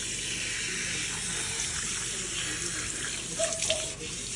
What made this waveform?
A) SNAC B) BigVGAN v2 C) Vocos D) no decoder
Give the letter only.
D